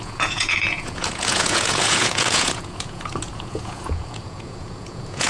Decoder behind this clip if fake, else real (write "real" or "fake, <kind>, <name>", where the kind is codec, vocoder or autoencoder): fake, vocoder, Vocos